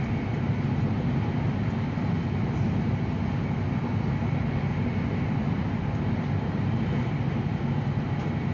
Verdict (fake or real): real